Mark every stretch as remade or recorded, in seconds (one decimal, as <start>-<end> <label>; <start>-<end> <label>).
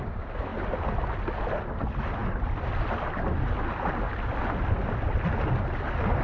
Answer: 0.0-6.2 recorded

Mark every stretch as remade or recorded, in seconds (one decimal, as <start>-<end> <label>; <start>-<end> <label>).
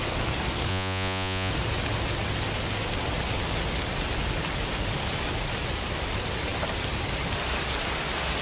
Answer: 0.0-0.7 recorded; 0.7-1.5 remade; 1.5-8.4 recorded